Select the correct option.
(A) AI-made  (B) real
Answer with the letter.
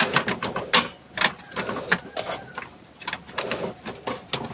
B